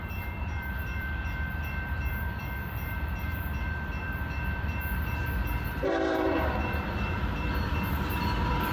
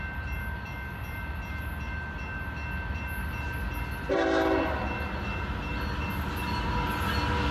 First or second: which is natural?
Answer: second